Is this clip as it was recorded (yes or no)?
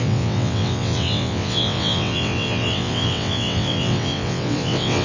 no